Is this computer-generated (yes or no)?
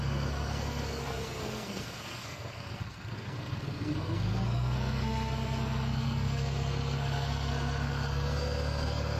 yes